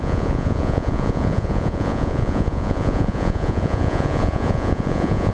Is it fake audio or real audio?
fake